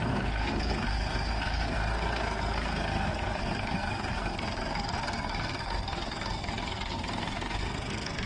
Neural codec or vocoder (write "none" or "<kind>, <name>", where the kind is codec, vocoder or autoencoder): codec, SNAC